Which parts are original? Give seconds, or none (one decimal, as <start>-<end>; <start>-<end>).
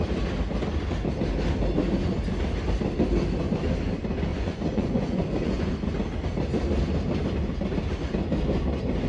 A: 0.0-4.3; 5.7-9.1